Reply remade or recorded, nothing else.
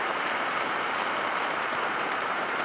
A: remade